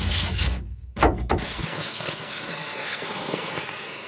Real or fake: fake